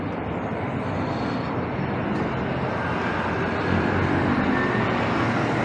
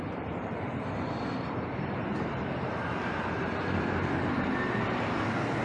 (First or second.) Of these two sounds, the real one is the first